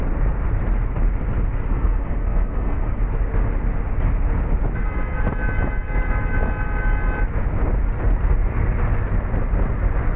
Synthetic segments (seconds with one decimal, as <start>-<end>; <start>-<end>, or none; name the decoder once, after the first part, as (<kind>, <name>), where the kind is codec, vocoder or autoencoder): 1.7-3.0 (codec, SNAC)